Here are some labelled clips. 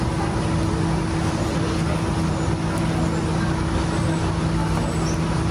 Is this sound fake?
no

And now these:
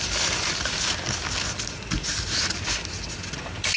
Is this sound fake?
no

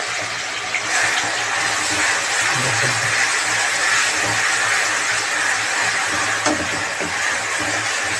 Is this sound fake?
no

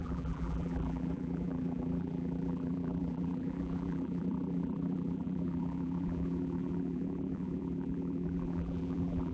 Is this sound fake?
yes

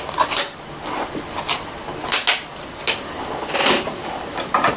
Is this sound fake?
no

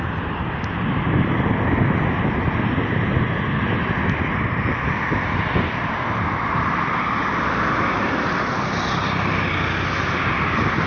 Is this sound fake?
no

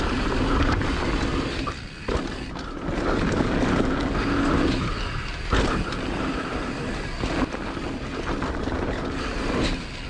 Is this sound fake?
no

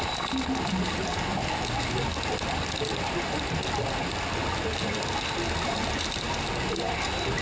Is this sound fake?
no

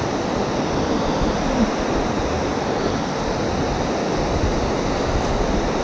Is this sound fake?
no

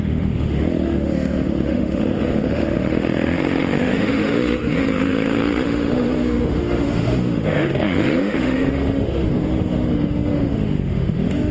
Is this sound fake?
yes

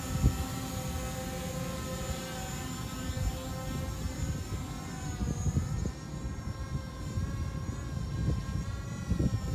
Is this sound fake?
no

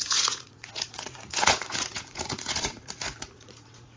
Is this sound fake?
yes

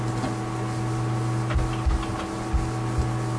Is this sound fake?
no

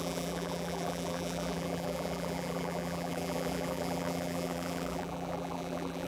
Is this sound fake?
yes